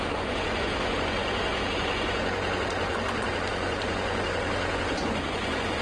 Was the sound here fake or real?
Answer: fake